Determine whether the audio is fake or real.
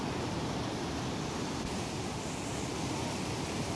real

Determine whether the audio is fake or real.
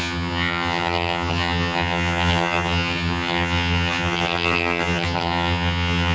fake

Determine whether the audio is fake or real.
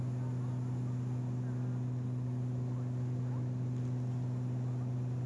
real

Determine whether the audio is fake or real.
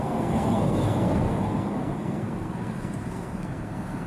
fake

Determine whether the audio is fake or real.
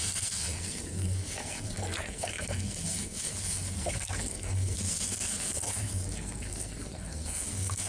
fake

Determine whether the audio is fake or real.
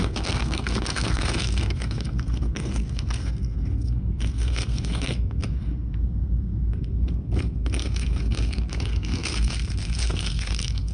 fake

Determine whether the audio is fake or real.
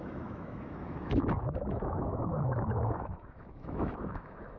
fake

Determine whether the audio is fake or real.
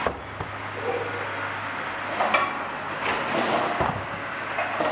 real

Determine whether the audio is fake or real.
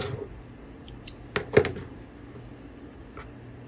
real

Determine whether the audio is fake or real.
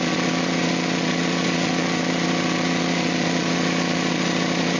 fake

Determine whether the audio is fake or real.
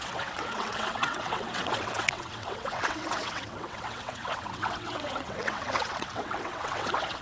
fake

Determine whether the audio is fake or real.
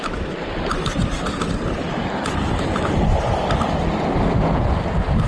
real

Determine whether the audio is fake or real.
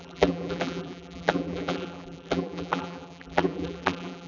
fake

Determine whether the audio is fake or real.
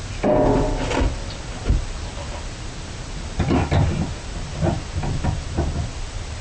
real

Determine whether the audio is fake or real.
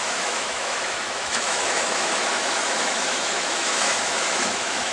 fake